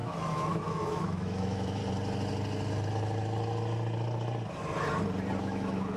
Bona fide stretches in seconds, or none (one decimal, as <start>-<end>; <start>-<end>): 1.8-5.4